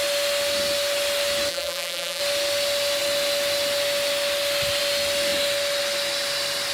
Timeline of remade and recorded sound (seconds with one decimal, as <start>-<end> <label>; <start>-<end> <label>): 0.0-1.5 recorded; 1.5-2.2 remade; 2.2-6.7 recorded